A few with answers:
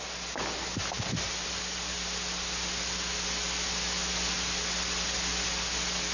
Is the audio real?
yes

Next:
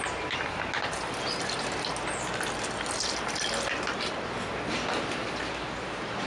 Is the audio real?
yes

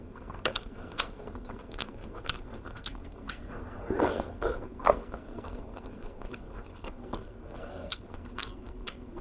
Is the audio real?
no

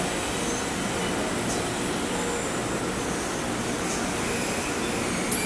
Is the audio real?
yes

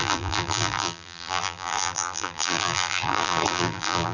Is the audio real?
no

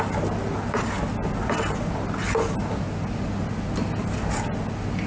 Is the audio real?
yes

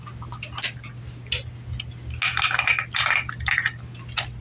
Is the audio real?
yes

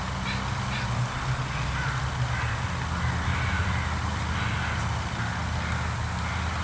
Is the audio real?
yes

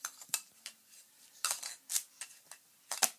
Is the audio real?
yes